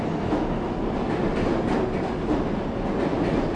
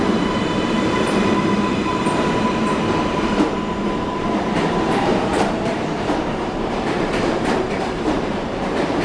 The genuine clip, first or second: first